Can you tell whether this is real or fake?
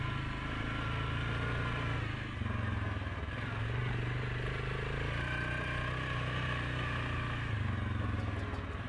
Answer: real